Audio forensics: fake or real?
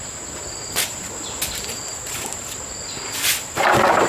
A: real